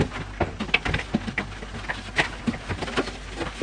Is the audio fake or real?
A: real